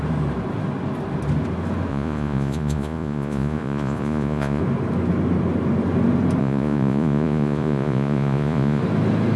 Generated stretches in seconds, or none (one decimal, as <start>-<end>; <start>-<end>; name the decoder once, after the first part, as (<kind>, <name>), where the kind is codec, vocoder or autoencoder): 1.9-4.6 (vocoder, Vocos); 6.4-8.8